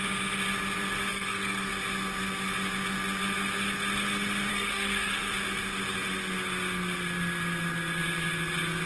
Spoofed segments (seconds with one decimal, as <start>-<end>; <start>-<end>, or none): 1.1-1.7; 4.5-5.3